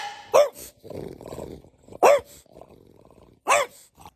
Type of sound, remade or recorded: recorded